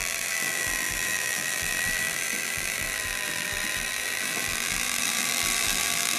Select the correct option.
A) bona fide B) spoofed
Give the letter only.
B